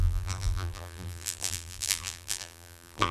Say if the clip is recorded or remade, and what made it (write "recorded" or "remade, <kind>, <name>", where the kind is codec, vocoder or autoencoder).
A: remade, vocoder, BigVGAN v2